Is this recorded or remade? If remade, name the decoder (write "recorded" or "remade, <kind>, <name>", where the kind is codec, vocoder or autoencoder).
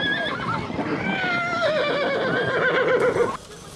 recorded